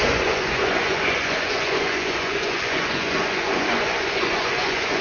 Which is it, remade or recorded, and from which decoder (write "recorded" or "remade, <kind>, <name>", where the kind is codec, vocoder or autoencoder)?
remade, vocoder, Vocos